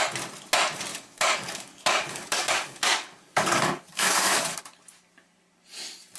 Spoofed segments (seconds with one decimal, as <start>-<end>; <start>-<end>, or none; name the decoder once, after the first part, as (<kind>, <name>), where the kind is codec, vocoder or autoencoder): 0.9-4.6 (codec, DAC)